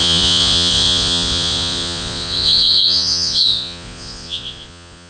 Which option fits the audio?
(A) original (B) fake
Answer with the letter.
B